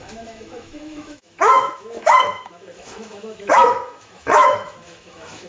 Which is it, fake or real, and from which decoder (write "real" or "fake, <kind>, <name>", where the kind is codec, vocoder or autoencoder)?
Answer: fake, autoencoder, DAC-VAE